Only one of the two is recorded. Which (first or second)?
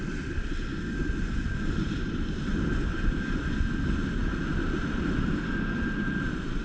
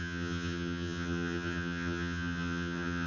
first